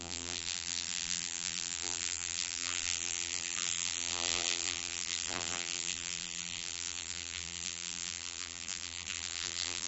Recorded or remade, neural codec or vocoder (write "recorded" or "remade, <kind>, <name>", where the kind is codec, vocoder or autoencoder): remade, vocoder, BigVGAN v2